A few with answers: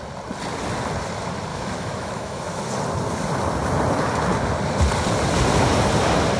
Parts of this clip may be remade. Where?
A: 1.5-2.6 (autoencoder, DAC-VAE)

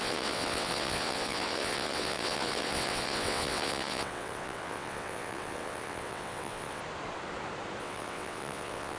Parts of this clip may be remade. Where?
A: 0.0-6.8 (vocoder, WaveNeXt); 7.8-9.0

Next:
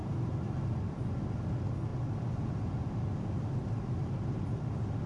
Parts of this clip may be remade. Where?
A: 0.0-0.6 (vocoder, BigVGAN v2)